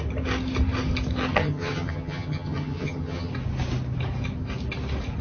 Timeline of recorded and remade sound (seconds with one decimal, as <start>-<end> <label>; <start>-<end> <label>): 0.0-1.3 recorded; 1.3-3.3 remade; 3.3-5.2 recorded